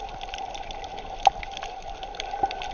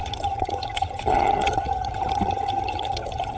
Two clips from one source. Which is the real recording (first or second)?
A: first